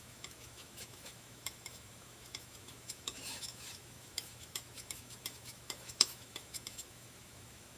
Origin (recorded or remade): remade